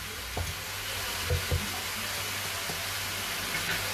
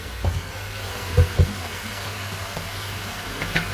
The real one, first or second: first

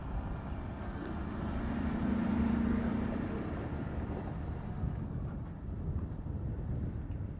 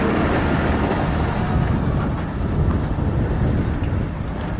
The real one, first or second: second